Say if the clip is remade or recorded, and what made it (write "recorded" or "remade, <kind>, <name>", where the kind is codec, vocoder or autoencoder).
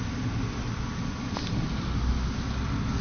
recorded